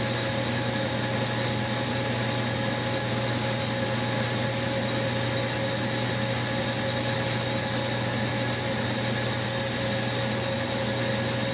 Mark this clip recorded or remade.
recorded